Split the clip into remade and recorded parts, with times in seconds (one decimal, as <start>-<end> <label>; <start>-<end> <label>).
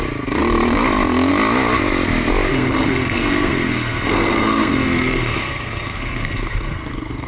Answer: 0.0-2.5 recorded; 2.5-7.3 remade